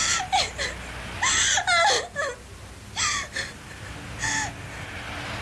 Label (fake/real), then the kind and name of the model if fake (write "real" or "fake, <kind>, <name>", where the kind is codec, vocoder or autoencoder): real